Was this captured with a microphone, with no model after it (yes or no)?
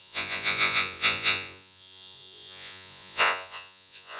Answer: no